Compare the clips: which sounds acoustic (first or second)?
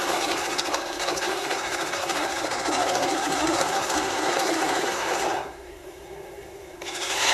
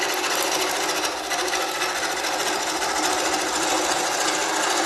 second